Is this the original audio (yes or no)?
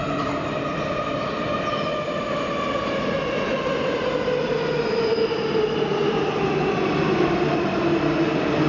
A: yes